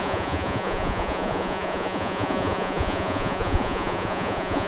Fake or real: fake